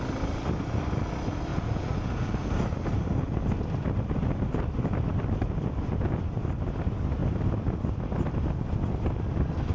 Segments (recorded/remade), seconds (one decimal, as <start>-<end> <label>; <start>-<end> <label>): 0.0-1.5 recorded; 1.5-2.3 remade; 2.3-9.7 recorded